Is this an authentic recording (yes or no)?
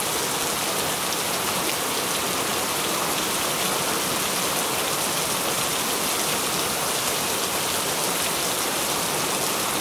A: yes